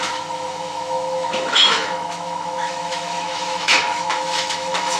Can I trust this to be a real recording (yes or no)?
no